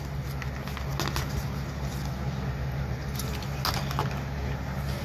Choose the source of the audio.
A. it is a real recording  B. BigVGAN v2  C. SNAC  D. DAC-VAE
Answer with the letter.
A